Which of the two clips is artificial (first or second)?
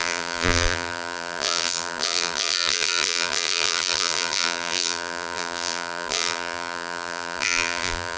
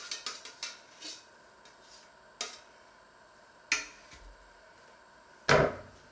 first